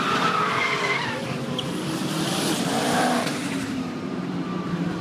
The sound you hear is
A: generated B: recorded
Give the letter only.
A